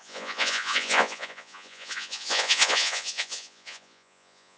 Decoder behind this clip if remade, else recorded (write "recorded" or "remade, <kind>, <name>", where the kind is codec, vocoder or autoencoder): remade, vocoder, Vocos